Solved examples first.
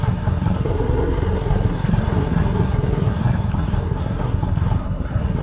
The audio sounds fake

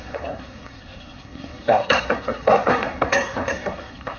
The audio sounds fake